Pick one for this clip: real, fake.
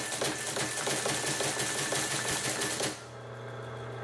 real